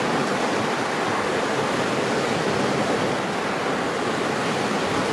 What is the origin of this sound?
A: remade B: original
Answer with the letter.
B